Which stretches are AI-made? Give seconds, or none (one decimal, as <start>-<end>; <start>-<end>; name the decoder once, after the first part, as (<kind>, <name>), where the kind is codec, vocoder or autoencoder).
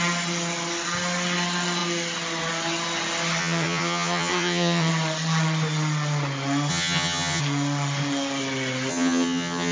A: 3.4-4.9 (vocoder, HiFi-GAN); 6.7-7.4; 8.9-9.7